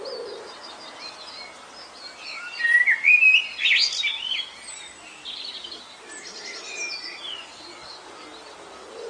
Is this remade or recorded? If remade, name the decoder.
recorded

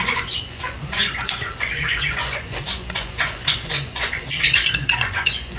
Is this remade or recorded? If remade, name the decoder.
remade, vocoder, Vocos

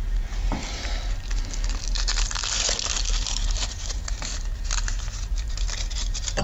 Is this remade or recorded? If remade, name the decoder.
recorded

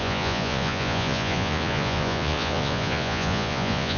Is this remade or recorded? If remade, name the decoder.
remade, vocoder, Vocos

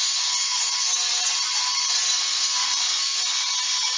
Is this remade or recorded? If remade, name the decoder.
recorded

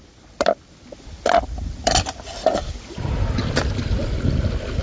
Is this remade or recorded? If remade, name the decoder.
recorded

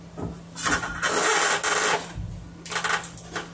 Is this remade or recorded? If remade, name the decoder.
recorded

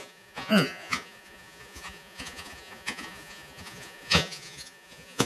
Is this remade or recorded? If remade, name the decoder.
remade, vocoder, Vocos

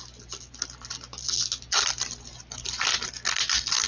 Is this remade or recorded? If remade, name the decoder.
recorded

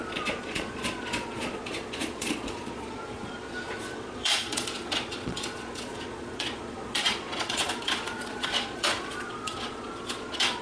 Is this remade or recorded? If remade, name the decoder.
remade, vocoder, Vocos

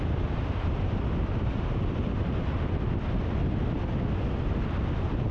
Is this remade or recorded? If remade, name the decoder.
recorded